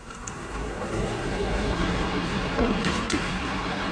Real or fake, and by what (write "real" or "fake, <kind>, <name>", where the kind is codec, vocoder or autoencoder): fake, codec, SNAC